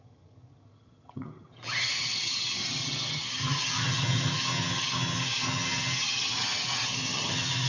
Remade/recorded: remade